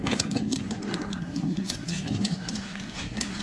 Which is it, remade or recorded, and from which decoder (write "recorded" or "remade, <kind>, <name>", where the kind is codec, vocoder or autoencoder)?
remade, codec, SNAC